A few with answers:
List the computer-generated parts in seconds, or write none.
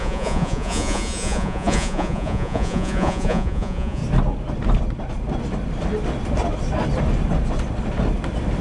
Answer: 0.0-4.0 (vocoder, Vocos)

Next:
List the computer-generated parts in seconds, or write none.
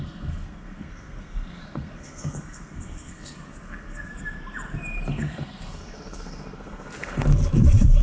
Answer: 0.0-4.1 (codec, SNAC); 5.1-7.4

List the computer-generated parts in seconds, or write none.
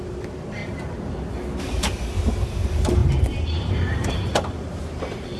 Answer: 0.0-0.6 (vocoder, BigVGAN v2); 1.6-5.4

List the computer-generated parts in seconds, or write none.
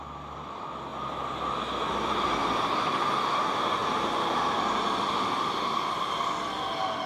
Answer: 3.8-4.6 (vocoder, BigVGAN v2)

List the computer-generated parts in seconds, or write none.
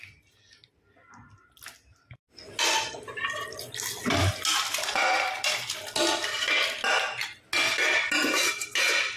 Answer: none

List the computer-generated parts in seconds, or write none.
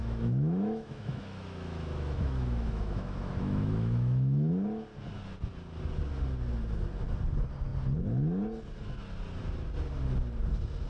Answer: 0.0-4.5 (autoencoder, DAC-VAE)